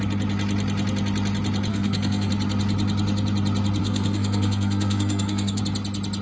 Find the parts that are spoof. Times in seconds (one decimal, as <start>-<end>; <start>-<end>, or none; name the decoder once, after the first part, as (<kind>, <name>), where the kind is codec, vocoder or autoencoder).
1.7-2.3 (codec, SNAC); 3.8-5.6